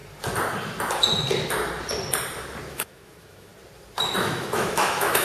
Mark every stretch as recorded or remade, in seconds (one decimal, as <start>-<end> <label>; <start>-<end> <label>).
0.0-2.7 recorded; 2.7-3.5 remade; 3.5-4.2 recorded; 4.2-5.2 remade

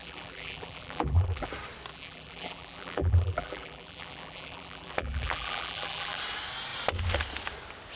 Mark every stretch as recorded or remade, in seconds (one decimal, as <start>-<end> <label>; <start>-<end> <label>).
0.0-1.5 remade; 1.5-1.9 recorded; 1.9-6.2 remade; 6.2-8.0 recorded